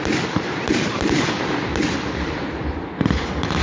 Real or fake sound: real